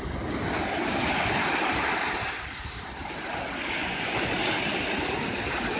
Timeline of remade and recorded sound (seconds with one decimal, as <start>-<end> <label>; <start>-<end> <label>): 0.0-3.8 recorded; 3.8-4.3 remade; 4.3-5.8 recorded